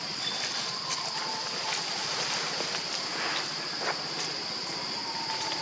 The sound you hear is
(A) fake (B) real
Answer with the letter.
B